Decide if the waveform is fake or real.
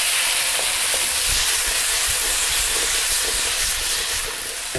real